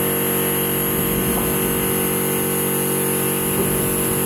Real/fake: real